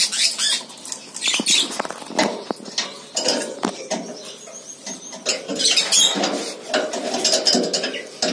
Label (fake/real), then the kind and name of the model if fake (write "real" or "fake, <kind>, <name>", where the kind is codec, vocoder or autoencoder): real